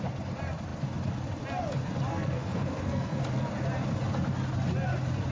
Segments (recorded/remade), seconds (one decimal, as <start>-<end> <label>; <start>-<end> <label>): 0.0-2.1 recorded; 2.1-3.2 remade; 3.2-5.3 recorded